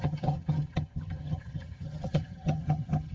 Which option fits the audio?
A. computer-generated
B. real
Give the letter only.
A